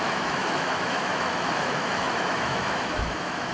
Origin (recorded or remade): remade